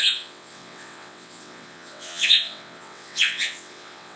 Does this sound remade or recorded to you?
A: remade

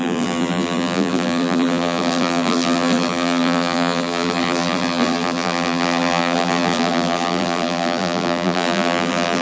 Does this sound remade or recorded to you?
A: remade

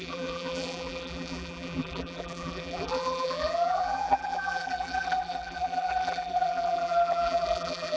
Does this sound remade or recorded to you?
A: remade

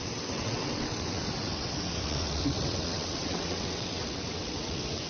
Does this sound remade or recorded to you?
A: remade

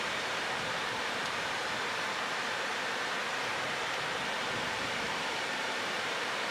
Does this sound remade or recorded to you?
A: remade